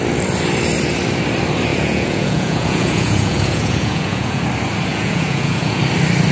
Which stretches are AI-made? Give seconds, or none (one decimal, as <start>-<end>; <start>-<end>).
1.7-4.4; 4.9-5.8